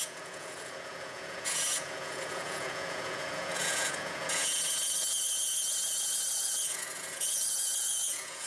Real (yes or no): no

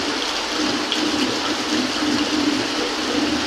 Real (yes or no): yes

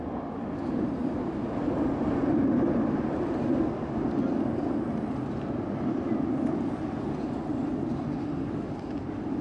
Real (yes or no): yes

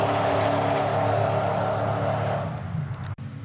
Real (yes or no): yes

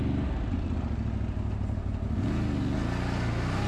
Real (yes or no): yes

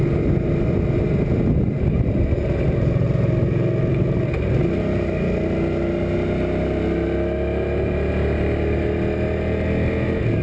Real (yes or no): yes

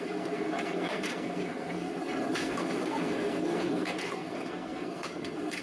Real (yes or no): no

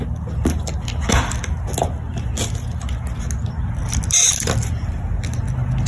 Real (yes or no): yes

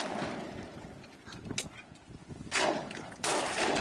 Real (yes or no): no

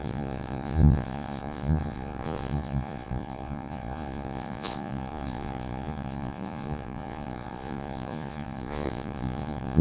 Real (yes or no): no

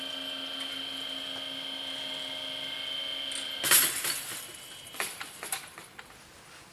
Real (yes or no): yes